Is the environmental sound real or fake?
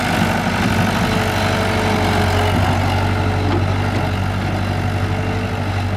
real